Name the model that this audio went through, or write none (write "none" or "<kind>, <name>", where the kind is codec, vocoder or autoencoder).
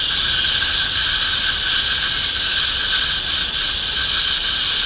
none